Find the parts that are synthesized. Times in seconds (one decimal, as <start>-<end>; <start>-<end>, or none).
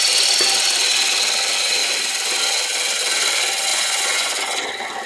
3.7-4.3